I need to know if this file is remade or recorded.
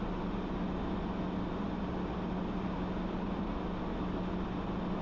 recorded